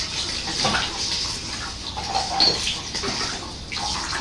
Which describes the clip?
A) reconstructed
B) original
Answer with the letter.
B